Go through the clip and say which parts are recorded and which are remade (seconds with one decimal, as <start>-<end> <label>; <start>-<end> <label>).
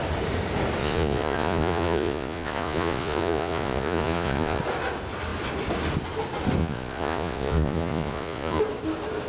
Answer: 0.0-0.8 recorded; 0.8-4.6 remade; 4.6-6.6 recorded; 6.6-8.6 remade; 8.6-9.3 recorded